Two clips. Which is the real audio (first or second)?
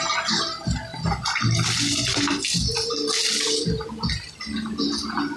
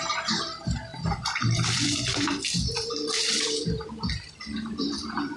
first